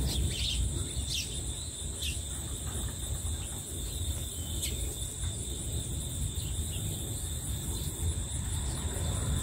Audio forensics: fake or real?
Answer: real